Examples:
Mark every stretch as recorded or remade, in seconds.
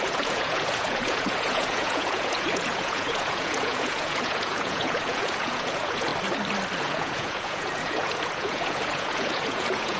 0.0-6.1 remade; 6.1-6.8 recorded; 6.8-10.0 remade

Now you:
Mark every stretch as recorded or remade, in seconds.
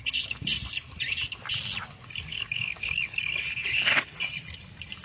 0.0-2.3 recorded; 2.3-3.3 remade; 3.3-5.0 recorded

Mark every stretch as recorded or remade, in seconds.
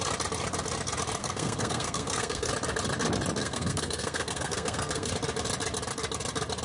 0.0-1.2 recorded; 1.2-2.5 remade; 2.5-3.4 recorded; 3.4-5.1 remade; 5.1-6.6 recorded